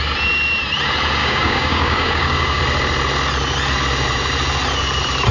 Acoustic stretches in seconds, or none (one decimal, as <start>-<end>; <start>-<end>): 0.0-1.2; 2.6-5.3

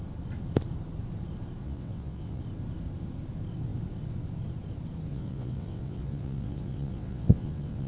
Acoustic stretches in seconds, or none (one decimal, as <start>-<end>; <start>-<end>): 0.0-1.6; 2.4-5.1

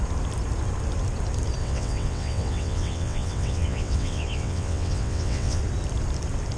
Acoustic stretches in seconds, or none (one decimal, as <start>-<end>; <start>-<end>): 0.0-1.6; 5.6-6.6

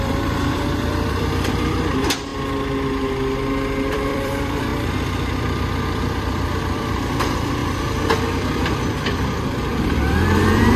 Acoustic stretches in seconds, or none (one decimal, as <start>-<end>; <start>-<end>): 2.3-3.9; 4.7-5.3; 7.6-8.7

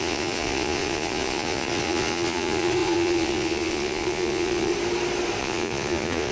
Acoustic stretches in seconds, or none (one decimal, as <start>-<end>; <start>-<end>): 4.7-5.4